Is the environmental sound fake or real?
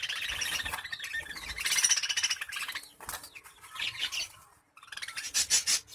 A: real